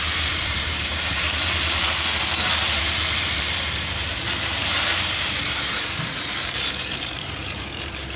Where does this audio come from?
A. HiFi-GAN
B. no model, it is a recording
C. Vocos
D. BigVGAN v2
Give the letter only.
D